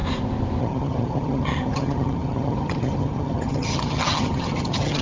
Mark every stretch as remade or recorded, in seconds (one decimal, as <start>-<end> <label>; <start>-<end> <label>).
0.0-0.6 recorded; 0.6-5.0 remade